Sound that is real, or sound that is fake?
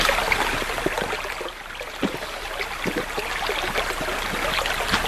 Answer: real